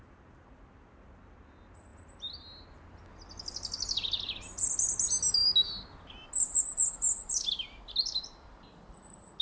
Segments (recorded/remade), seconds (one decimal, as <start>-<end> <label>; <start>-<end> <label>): 0.0-9.4 recorded